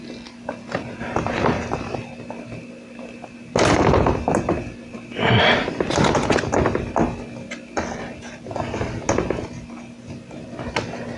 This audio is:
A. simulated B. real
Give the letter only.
B